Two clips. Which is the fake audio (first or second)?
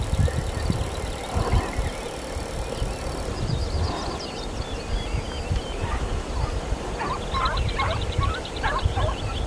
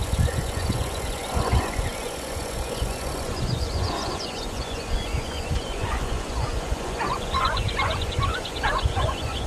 second